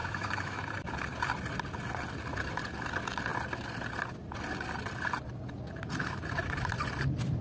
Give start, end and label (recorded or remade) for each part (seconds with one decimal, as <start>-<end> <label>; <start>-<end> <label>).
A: 0.0-0.6 remade; 0.6-7.4 recorded

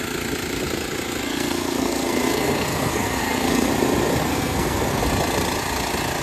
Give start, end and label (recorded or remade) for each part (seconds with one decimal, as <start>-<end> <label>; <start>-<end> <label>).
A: 0.0-1.2 recorded; 1.2-3.7 remade; 3.7-4.2 recorded; 4.2-5.0 remade; 5.0-6.2 recorded

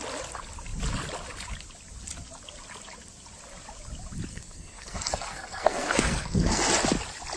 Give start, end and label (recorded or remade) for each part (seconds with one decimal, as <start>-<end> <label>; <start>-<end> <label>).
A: 0.0-4.3 recorded; 4.3-6.6 remade; 6.6-7.4 recorded

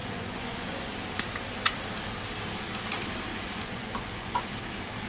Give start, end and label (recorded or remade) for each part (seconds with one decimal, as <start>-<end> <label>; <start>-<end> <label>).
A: 0.0-0.9 remade; 0.9-3.3 recorded; 3.3-4.5 remade; 4.5-5.1 recorded

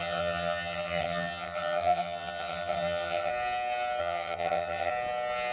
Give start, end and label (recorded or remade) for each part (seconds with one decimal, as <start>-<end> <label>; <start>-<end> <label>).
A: 0.0-3.3 remade; 3.3-4.0 recorded; 4.0-4.9 remade; 4.9-5.5 recorded